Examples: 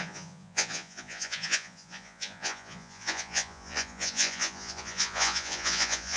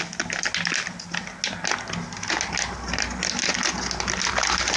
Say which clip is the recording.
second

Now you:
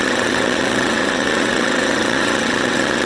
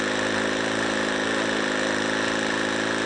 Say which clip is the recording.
second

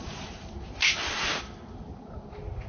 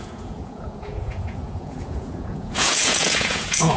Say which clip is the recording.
first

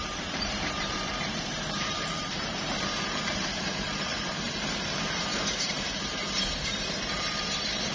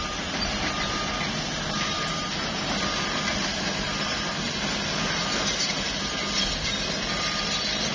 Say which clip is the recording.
second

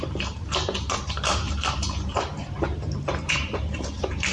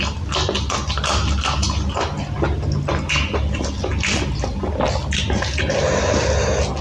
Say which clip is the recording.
second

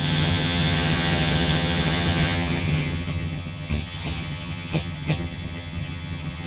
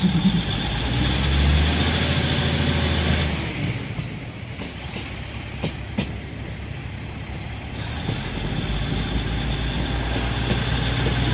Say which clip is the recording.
second